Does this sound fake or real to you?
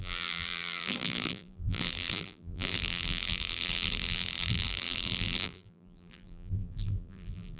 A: fake